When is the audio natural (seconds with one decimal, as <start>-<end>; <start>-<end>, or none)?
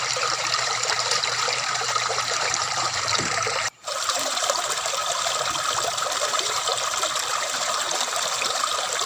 5.0-6.2; 6.7-7.3